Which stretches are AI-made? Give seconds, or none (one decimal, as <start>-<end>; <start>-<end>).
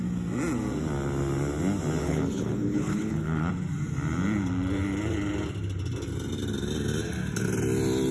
2.0-3.5